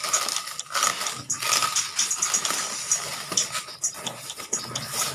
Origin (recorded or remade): remade